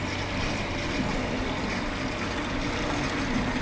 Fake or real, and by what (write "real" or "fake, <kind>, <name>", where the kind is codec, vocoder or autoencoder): real